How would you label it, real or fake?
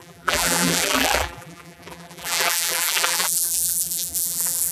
fake